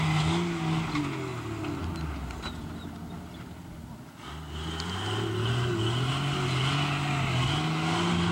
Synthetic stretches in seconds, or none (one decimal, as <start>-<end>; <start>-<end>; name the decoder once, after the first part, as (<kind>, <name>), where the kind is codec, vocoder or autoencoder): none